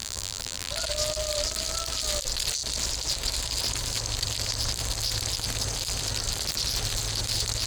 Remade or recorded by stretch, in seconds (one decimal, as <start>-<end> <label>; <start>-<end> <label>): 0.0-0.7 remade; 0.7-7.7 recorded